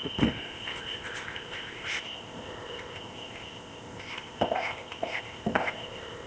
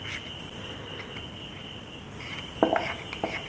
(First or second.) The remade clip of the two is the first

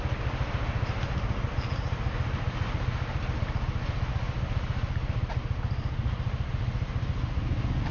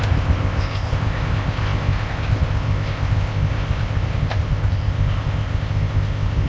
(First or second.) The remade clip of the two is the second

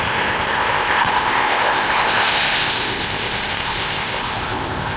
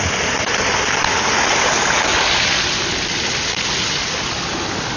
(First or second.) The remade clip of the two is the first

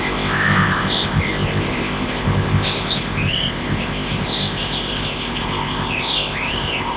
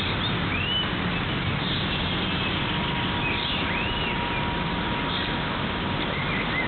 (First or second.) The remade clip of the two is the first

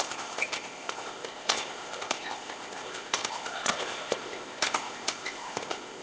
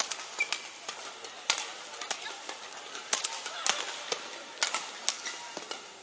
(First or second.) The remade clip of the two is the first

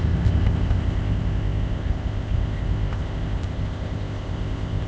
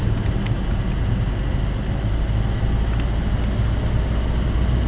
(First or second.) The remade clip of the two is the first